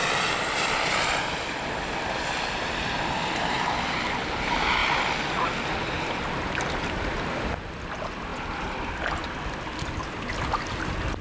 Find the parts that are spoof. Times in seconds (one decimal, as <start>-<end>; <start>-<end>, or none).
8.3-8.9